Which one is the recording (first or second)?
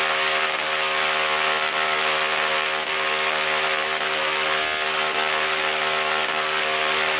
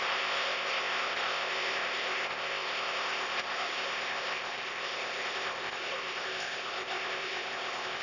first